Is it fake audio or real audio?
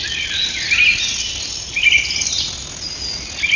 real